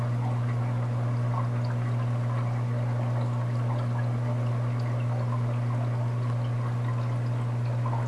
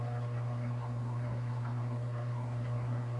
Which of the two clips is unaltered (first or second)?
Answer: first